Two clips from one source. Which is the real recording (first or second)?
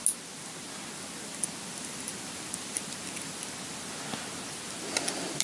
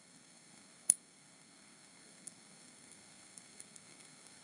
first